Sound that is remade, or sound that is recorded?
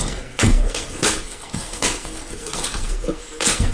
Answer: remade